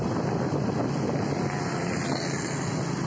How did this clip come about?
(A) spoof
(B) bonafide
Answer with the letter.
B